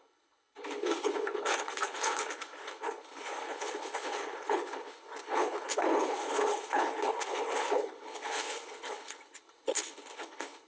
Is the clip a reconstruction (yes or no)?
yes